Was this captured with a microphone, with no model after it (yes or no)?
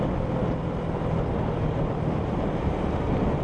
yes